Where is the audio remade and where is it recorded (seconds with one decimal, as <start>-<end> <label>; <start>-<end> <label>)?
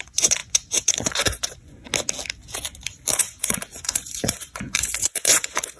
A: 0.0-1.9 remade; 1.9-3.1 recorded; 3.1-5.8 remade